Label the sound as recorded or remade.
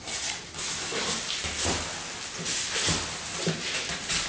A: recorded